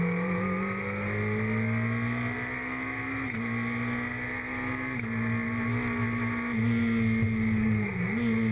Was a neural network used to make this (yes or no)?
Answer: no